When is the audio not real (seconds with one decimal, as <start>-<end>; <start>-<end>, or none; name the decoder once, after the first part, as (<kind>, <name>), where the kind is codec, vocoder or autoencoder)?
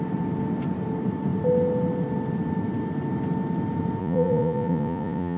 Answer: 4.0-5.4 (vocoder, Vocos)